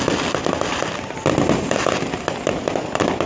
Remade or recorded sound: recorded